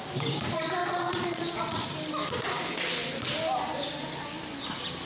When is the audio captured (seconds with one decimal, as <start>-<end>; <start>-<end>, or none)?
0.0-0.8; 1.8-5.1